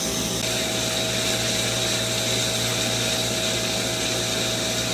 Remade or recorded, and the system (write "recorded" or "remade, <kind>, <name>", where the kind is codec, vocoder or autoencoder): recorded